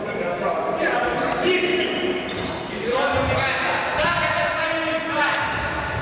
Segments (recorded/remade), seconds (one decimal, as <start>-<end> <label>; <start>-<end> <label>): 0.0-6.0 recorded

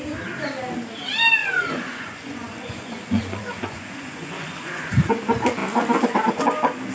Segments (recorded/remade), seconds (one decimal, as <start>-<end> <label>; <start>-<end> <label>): 0.0-1.4 recorded; 1.4-5.1 remade; 5.1-6.9 recorded

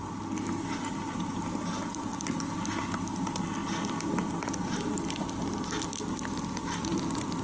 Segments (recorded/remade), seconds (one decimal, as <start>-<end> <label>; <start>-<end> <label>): 0.0-7.4 recorded